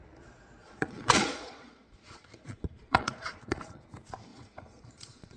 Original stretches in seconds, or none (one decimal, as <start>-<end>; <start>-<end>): 0.0-0.6; 3.8-4.3